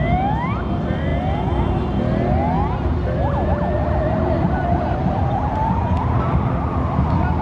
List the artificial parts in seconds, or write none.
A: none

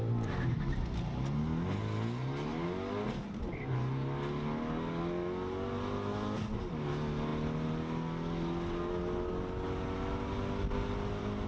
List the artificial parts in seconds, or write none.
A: none

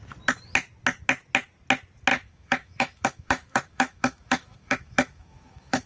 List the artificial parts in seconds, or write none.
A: 2.1-5.9 (autoencoder, DAC-VAE)

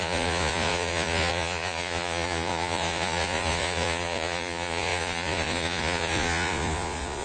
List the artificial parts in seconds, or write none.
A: 0.0-7.2 (vocoder, Vocos)

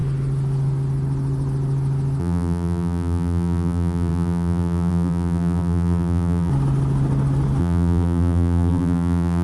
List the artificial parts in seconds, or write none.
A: 2.2-6.5 (vocoder, BigVGAN v2); 7.6-9.4

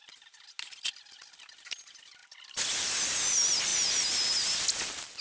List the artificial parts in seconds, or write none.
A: none